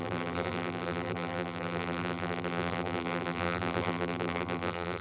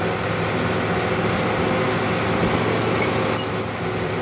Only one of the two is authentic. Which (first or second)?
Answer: second